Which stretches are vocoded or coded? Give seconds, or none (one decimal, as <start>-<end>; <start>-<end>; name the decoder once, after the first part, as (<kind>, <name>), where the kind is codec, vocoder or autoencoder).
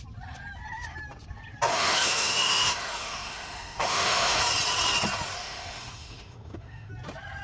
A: 1.7-4.4 (autoencoder, DAC-VAE); 5.4-6.9